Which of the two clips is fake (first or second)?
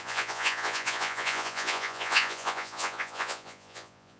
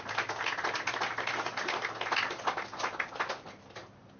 first